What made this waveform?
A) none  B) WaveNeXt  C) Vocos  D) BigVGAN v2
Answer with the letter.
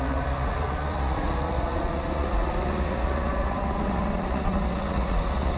C